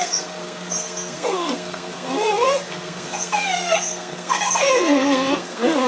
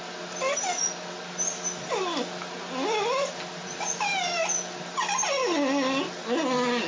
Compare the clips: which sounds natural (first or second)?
second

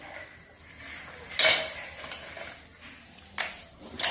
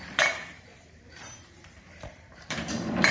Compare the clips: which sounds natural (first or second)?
first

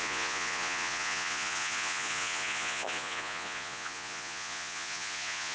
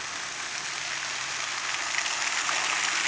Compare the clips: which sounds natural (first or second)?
second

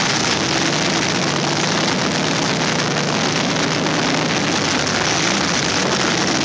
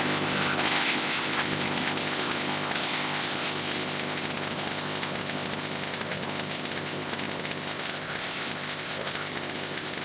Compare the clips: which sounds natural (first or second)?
first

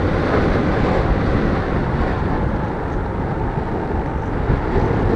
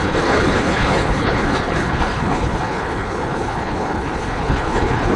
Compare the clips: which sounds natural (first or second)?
first